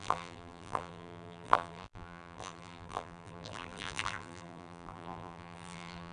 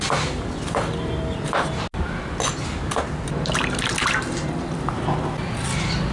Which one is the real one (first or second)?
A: second